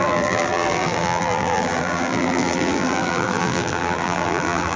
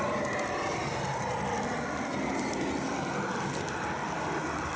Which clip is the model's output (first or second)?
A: first